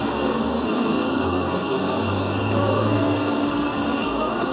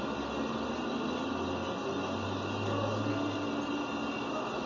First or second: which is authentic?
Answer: second